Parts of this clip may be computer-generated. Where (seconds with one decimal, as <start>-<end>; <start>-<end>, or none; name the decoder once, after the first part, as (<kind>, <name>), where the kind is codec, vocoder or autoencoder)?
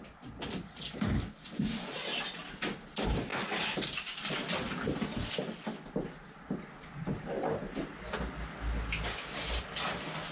none